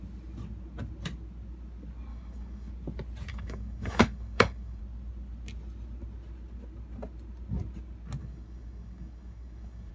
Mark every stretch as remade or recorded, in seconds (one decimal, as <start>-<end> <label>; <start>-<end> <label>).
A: 0.0-2.1 recorded; 2.1-2.7 remade; 2.7-3.3 recorded; 3.3-4.8 remade; 4.8-8.2 recorded; 8.2-9.9 remade